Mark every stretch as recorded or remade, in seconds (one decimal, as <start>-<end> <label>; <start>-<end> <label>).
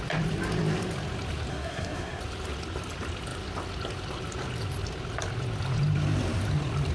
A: 0.0-1.5 recorded; 1.5-2.2 remade; 2.2-6.9 recorded